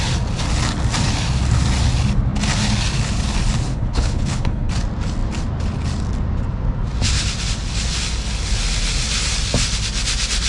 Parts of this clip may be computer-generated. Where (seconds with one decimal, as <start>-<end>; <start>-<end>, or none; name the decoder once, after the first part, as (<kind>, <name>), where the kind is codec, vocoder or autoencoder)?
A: 3.7-4.7 (codec, HILCodec)